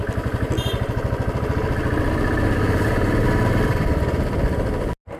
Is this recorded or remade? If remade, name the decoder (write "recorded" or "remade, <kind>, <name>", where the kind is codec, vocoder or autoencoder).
recorded